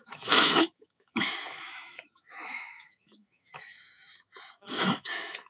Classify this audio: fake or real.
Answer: fake